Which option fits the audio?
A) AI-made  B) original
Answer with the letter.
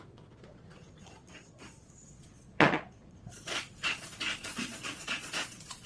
A